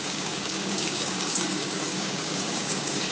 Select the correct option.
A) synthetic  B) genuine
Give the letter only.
A